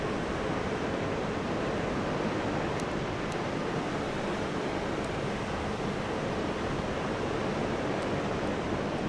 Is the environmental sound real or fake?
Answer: real